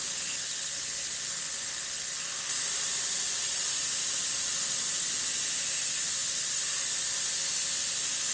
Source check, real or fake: real